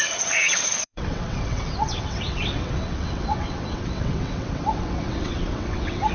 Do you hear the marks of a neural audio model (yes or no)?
yes